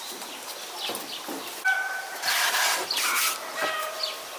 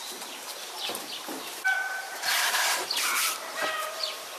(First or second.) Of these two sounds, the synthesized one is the second